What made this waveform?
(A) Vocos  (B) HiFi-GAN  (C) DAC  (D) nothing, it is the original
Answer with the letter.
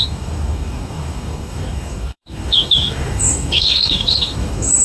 C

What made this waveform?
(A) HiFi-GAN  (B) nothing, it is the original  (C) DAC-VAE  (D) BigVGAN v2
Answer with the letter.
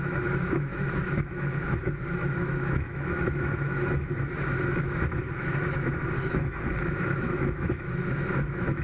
C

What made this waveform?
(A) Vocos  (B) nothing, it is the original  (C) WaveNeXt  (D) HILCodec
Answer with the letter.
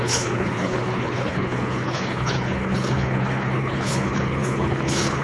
D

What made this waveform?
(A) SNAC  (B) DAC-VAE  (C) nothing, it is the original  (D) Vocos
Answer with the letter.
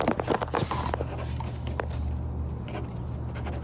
C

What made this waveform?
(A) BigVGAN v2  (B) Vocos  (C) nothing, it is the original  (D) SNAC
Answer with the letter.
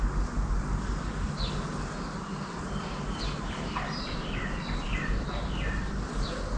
C